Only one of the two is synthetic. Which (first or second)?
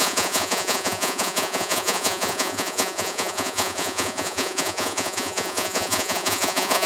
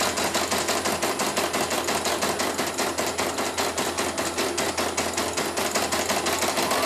first